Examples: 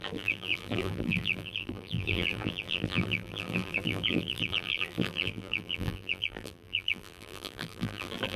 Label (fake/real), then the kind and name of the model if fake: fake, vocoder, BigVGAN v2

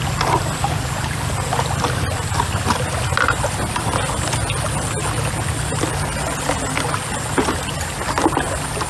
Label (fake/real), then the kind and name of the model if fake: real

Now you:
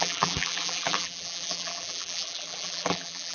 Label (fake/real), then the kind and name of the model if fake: fake, vocoder, BigVGAN v2